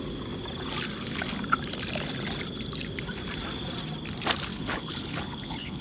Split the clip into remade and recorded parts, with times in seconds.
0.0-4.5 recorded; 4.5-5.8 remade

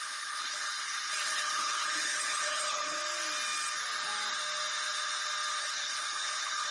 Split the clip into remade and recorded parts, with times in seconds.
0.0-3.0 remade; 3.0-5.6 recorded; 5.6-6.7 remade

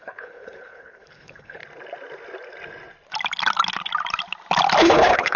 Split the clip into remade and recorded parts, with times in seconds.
0.0-1.6 remade; 1.6-4.8 recorded; 4.8-5.4 remade